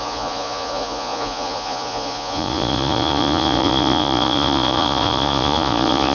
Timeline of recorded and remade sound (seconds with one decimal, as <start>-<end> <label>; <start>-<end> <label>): 0.0-6.1 remade